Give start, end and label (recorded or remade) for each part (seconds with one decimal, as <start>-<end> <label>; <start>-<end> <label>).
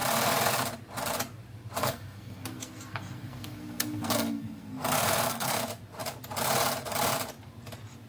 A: 0.0-1.8 recorded; 1.8-5.6 remade; 5.6-8.1 recorded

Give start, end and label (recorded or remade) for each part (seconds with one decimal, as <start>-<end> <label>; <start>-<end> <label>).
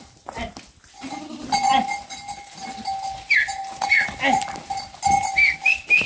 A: 0.0-6.1 recorded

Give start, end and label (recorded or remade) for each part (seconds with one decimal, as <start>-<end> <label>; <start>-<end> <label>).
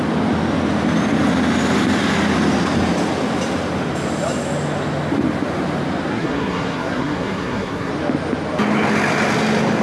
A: 0.0-6.1 recorded; 6.1-7.9 remade; 7.9-9.8 recorded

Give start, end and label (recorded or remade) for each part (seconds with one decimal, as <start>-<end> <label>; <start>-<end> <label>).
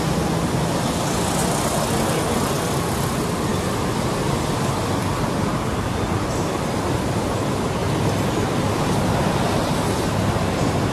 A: 0.0-10.9 recorded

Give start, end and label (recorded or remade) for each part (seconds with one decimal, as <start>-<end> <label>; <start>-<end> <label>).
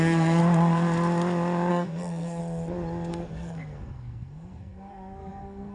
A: 0.0-0.4 remade; 0.4-1.7 recorded; 1.7-2.4 remade; 2.4-3.1 recorded; 3.1-5.7 remade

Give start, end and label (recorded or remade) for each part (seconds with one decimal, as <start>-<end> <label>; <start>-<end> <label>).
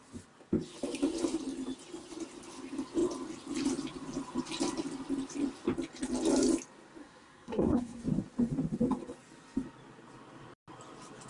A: 0.0-7.0 recorded; 7.0-8.0 remade; 8.0-11.3 recorded